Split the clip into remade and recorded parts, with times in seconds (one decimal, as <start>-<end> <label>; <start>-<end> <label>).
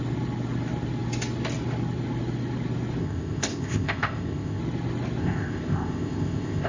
0.0-3.0 recorded; 3.0-4.6 remade; 4.6-5.2 recorded; 5.2-6.7 remade